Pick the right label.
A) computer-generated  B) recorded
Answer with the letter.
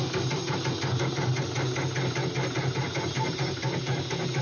B